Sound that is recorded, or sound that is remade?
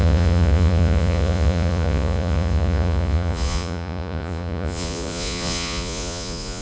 remade